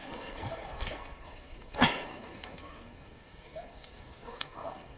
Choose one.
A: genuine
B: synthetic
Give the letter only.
B